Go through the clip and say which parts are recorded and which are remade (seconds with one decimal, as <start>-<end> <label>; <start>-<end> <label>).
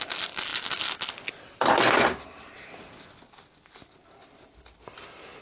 0.0-5.4 recorded